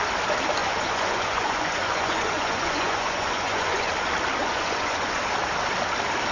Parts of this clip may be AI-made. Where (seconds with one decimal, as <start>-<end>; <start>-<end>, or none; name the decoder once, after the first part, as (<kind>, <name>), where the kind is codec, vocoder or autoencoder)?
0.6-3.9 (vocoder, Vocos); 4.4-5.2